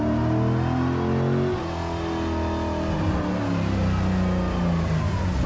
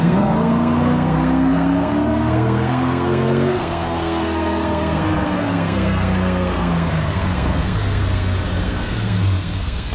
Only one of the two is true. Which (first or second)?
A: first